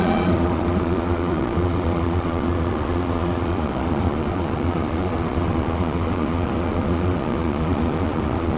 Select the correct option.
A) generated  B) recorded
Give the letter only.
A